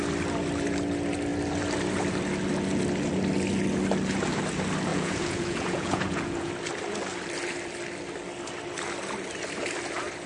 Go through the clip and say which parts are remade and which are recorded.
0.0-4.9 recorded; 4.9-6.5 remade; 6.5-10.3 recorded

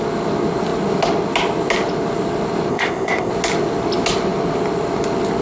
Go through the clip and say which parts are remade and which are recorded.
0.0-2.7 recorded; 2.7-3.3 remade; 3.3-5.4 recorded